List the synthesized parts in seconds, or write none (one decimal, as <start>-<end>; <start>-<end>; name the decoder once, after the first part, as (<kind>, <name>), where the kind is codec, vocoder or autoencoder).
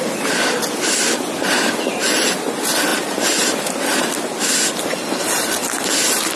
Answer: 2.9-4.0 (vocoder, BigVGAN v2)